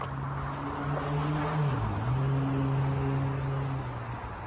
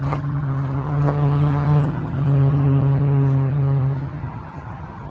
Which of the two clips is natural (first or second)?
first